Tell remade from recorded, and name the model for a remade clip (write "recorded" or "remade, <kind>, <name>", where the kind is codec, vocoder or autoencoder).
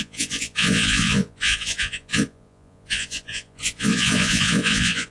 remade, vocoder, Vocos